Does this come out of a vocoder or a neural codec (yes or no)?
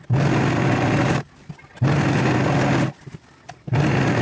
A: no